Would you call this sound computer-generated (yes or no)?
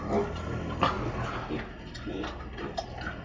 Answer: no